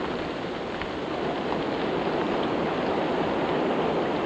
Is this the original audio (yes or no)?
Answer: yes